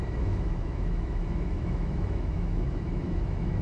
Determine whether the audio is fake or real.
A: fake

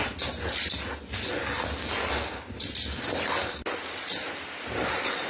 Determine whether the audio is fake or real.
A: real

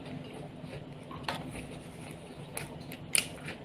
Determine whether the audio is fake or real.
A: real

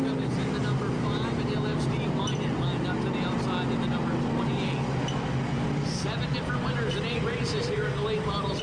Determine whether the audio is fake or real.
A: real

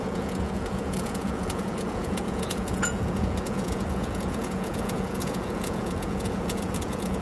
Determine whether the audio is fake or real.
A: fake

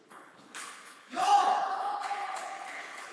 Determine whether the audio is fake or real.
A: fake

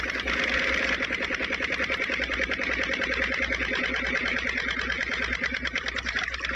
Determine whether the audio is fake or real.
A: real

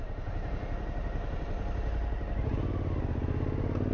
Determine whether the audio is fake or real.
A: real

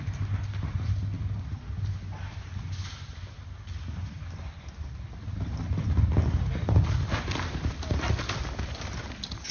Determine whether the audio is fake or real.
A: real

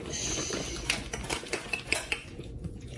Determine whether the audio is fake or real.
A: fake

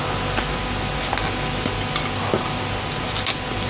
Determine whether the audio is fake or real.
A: real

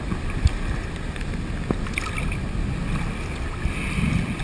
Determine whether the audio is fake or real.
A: real